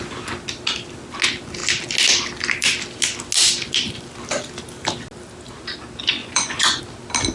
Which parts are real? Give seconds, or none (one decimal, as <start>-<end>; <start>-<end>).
0.0-6.2; 6.8-7.3